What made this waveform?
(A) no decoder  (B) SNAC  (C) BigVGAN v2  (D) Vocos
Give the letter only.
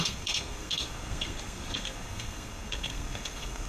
B